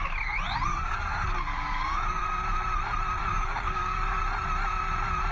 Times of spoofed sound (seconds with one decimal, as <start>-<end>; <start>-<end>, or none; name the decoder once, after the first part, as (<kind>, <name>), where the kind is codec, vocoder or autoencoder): 0.7-2.2 (codec, DAC); 3.2-4.2